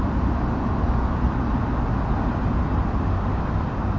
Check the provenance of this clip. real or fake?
real